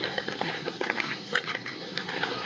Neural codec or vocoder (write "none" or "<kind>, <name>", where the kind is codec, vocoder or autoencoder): codec, SNAC